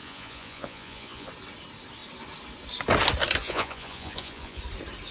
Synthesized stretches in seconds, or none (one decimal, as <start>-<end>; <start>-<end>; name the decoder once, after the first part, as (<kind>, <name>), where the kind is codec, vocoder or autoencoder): 0.0-1.3 (vocoder, Vocos); 3.4-4.6